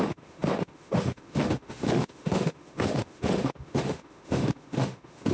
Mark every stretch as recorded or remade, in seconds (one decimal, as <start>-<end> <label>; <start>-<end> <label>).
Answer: 0.0-5.3 remade